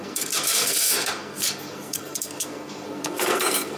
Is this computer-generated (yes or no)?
yes